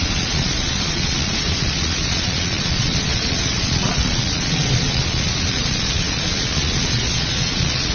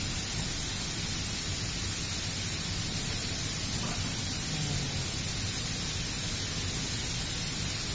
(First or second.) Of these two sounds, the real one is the second